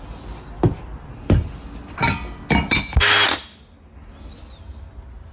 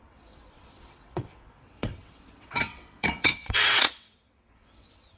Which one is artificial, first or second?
second